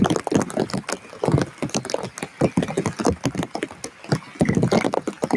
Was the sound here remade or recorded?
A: recorded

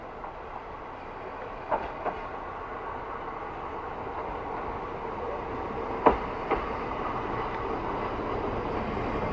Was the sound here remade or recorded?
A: recorded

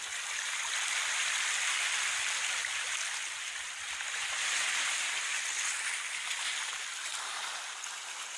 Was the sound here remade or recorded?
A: recorded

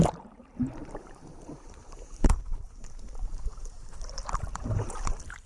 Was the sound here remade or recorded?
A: remade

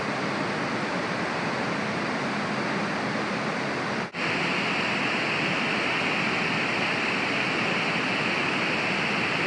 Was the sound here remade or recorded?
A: recorded